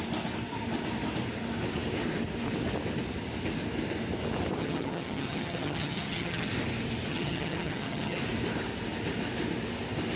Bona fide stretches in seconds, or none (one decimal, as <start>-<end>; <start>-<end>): 0.0-4.6; 6.5-7.1; 8.2-10.2